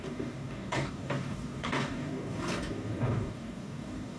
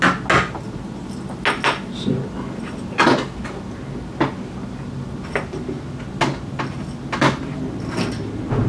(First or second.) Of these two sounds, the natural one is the second